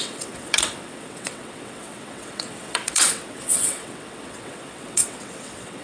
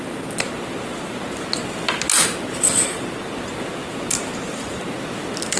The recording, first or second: second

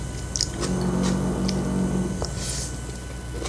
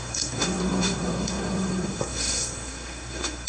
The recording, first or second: first